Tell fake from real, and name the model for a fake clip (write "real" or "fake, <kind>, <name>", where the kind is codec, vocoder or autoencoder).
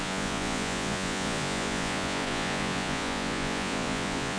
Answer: fake, vocoder, Vocos